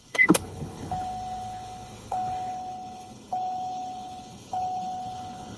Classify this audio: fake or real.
fake